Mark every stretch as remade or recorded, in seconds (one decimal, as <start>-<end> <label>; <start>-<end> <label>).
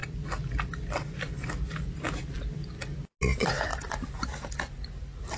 0.0-5.4 recorded